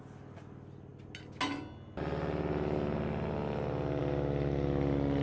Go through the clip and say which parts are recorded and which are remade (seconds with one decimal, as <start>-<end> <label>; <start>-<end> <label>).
0.0-5.2 recorded